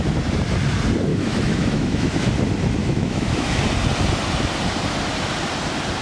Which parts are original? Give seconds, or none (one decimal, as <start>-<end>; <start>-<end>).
0.0-1.1; 2.3-2.8; 3.6-6.0